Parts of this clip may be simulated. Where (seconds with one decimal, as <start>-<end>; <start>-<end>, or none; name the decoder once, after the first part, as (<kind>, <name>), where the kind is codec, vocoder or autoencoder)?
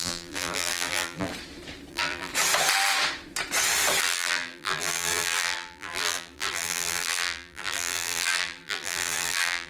0.0-1.3 (vocoder, BigVGAN v2); 1.9-2.3; 4.0-9.7